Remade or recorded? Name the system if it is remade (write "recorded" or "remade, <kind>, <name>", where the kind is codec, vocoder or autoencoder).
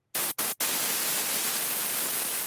recorded